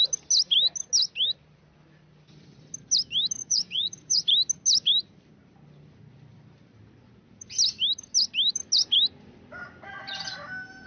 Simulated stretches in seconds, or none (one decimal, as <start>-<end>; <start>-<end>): 3.4-4.2